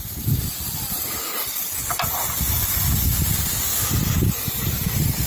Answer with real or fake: real